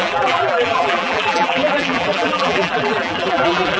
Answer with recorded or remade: remade